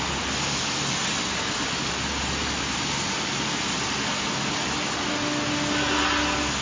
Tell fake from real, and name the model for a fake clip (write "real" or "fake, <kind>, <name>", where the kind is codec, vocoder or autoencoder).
real